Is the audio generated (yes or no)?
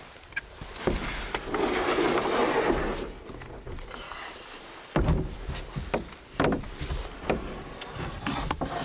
no